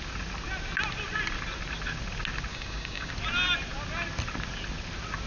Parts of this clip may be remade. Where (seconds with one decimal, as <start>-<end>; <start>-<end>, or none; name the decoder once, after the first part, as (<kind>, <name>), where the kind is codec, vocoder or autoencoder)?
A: 2.5-3.1 (codec, DAC)